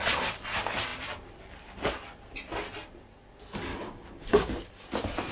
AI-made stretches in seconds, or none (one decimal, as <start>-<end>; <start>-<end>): 3.7-4.7